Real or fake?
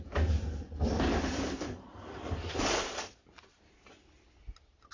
real